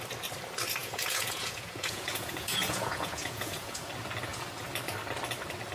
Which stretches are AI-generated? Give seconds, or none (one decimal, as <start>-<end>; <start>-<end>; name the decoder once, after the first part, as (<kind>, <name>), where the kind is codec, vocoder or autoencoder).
0.8-3.9 (vocoder, Vocos)